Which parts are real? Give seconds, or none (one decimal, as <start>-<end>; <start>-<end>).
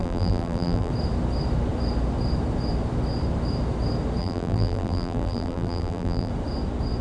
0.9-4.2; 6.3-7.0